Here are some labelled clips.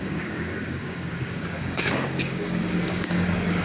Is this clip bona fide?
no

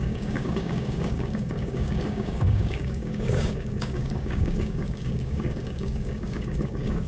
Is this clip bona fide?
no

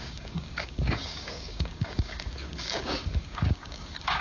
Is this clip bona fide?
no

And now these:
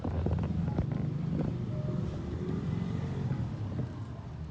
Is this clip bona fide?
yes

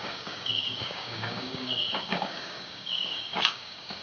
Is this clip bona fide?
no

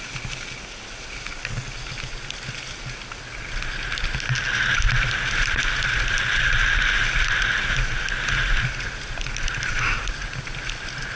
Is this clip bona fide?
yes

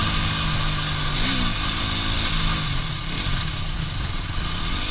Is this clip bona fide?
yes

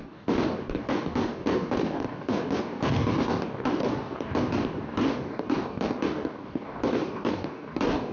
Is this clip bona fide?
no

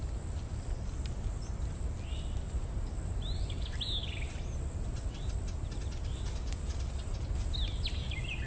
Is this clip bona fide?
yes